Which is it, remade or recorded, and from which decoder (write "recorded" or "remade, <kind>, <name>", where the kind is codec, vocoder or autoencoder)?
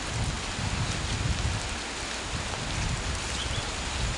recorded